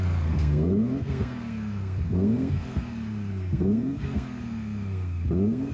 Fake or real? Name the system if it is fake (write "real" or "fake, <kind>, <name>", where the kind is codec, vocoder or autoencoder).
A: fake, codec, SNAC